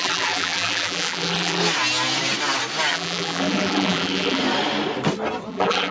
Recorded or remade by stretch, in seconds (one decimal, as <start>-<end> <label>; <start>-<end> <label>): 0.0-1.6 remade; 1.6-2.9 recorded; 2.9-4.4 remade; 4.4-5.5 recorded; 5.5-5.9 remade